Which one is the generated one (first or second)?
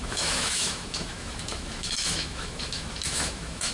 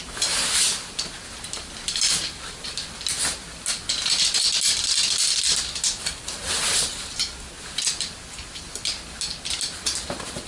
first